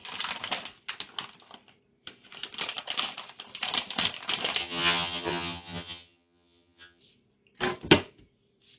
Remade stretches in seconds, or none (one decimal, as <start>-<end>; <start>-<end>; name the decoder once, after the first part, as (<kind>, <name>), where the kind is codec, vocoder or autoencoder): 4.6-7.0 (vocoder, HiFi-GAN)